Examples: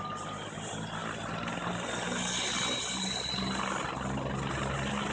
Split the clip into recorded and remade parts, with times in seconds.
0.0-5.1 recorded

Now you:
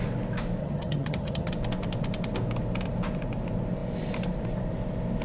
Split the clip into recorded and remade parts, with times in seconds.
0.0-0.6 recorded; 0.6-1.5 remade; 1.5-5.2 recorded

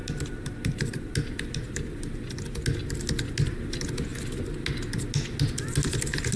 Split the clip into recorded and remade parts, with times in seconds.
0.0-6.4 recorded